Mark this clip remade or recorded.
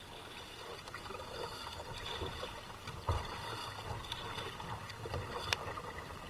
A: recorded